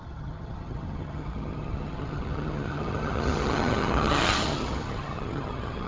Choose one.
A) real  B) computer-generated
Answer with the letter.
B